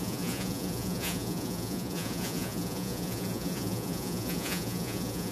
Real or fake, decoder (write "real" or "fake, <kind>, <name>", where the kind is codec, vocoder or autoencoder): fake, vocoder, Vocos